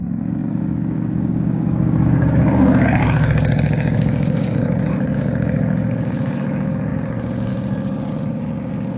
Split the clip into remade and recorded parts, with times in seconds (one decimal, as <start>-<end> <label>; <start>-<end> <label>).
0.0-9.0 remade